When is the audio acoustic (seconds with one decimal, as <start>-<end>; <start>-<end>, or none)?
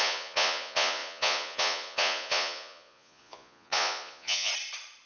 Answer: 4.5-5.1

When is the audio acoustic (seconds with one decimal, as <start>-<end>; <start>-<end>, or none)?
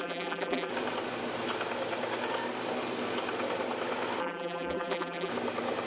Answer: 0.7-4.2; 5.3-5.9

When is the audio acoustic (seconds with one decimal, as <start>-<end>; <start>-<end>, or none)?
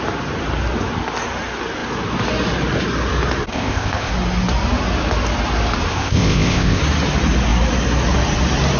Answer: 0.0-3.5; 4.1-5.9; 6.8-8.8